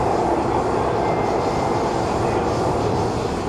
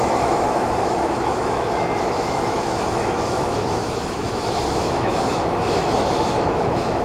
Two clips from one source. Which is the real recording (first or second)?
first